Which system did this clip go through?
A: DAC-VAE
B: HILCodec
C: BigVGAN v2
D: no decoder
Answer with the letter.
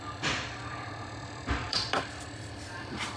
C